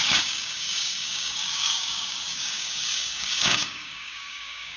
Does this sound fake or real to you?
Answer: fake